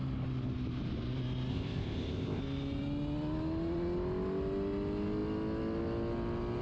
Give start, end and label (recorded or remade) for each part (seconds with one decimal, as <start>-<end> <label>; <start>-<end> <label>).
0.0-1.5 recorded; 1.5-2.4 remade; 2.4-6.6 recorded